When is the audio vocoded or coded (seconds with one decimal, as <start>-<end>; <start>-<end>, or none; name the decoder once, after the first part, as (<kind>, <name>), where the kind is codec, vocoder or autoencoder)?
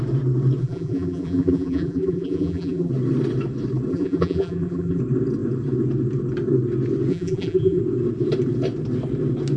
0.6-2.9 (vocoder, BigVGAN v2); 3.9-5.0; 7.1-7.8